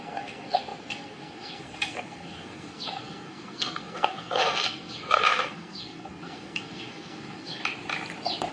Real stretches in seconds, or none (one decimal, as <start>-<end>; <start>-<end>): 7.6-8.5